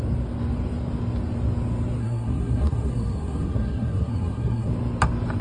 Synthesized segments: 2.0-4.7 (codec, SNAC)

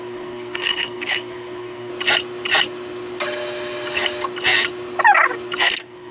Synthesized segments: 0.0-1.9 (codec, SNAC); 5.6-6.1

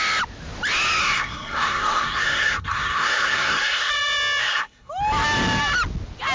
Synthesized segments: 1.0-3.9 (codec, SNAC); 4.4-4.9

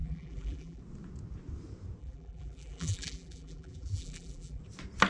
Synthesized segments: 0.0-0.8 (vocoder, BigVGAN v2); 2.0-4.6

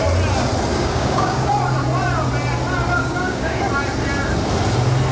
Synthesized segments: 0.7-1.5 (codec, DAC); 3.0-3.6

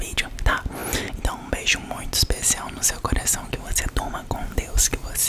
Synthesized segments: none